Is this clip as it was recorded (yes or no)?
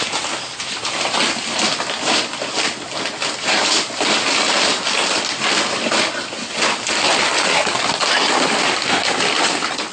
yes